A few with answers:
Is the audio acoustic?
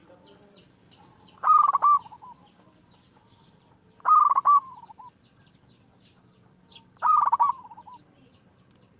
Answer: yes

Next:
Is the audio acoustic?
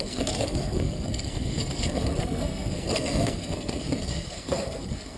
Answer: no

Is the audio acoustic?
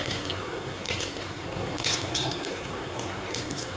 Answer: no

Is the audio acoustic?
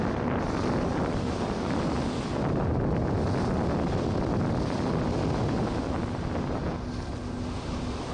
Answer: yes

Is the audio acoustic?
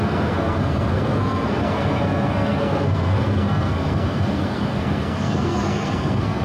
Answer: no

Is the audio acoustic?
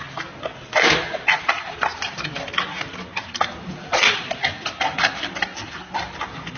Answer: yes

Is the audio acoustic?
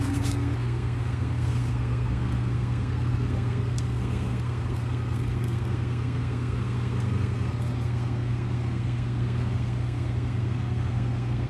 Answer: no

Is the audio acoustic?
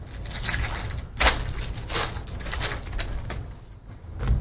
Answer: yes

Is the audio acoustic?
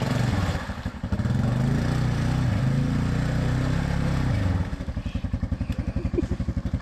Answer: yes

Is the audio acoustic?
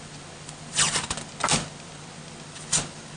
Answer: yes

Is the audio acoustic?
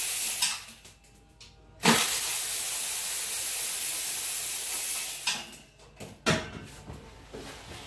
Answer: yes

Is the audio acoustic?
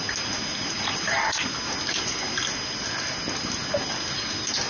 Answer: yes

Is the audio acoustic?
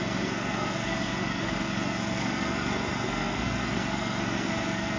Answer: no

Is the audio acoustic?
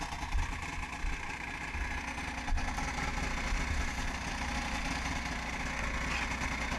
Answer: yes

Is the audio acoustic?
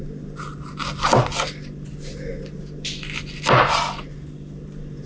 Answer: yes